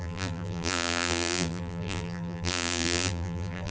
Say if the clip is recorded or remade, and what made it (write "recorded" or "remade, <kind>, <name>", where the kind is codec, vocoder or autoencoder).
remade, vocoder, BigVGAN v2